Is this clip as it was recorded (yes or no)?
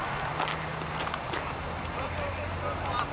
yes